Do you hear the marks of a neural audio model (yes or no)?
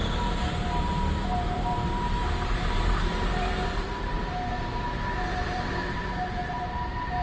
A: yes